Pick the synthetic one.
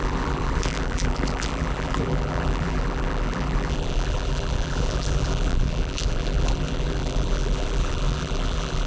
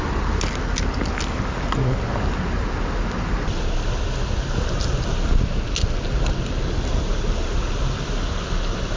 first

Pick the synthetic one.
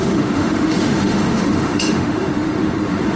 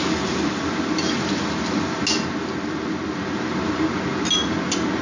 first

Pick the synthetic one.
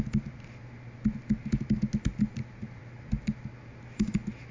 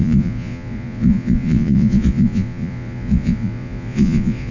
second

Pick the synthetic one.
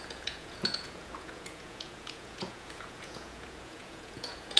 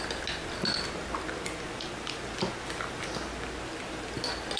first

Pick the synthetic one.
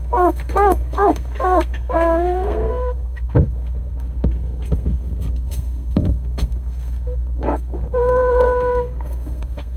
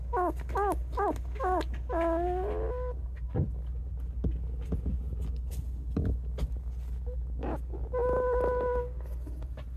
first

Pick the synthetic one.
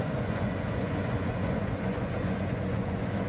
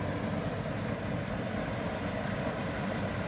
first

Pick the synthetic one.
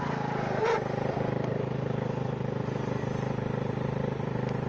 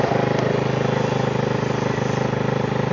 first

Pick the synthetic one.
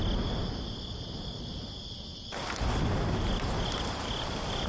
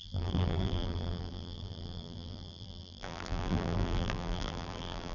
second